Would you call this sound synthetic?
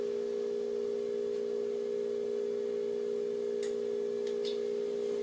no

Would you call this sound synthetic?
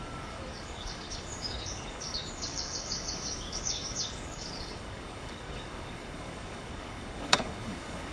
yes